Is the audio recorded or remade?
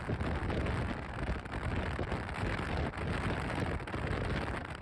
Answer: recorded